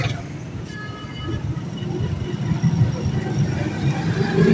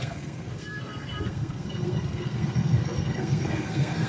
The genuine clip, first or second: first